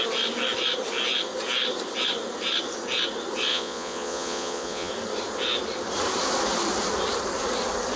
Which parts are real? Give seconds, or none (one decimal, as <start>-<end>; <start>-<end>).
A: 0.0-3.5; 4.9-8.0